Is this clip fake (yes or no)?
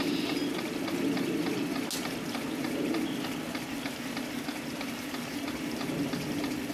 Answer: no